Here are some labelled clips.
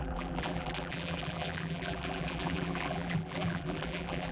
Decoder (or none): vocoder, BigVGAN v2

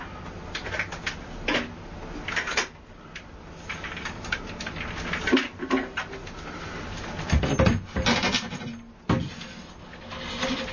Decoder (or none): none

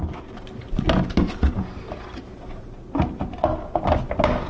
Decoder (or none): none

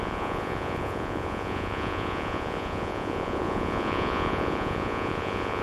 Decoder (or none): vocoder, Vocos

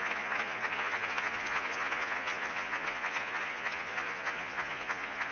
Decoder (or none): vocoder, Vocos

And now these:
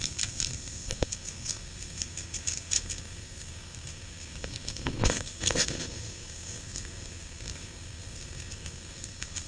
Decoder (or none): codec, SNAC